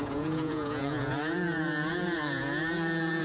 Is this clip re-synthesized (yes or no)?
yes